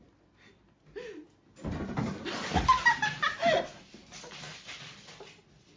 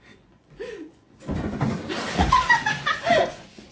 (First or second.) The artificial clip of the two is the second